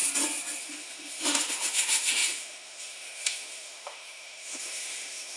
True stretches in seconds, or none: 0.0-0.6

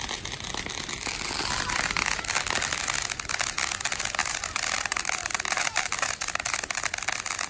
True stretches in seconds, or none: 0.0-4.2; 6.8-7.5

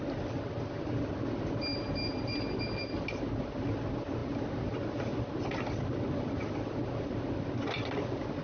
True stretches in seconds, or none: 0.0-8.4

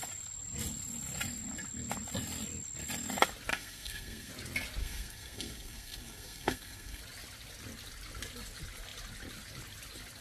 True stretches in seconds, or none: 0.0-3.5; 4.3-4.8; 7.0-10.2

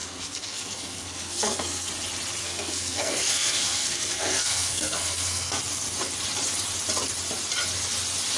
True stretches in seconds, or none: 1.9-2.4; 5.6-8.4

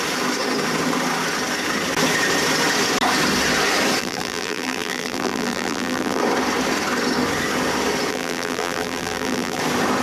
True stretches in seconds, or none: 0.0-4.0; 6.2-8.1; 9.6-10.0

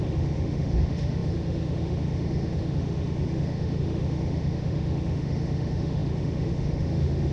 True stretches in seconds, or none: none

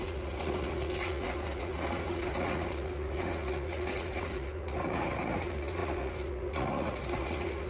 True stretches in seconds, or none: none